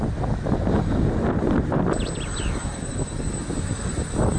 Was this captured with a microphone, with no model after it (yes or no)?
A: yes